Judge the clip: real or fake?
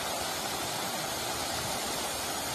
real